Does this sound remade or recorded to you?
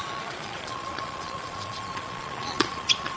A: remade